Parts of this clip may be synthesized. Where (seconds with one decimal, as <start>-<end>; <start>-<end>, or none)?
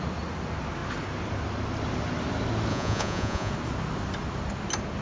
2.7-3.5